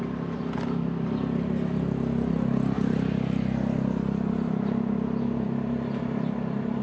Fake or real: real